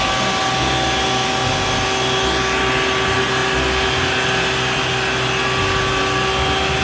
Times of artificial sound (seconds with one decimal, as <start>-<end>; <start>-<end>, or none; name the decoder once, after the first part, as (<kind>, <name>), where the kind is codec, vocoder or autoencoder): none